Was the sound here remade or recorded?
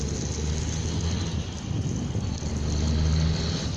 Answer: recorded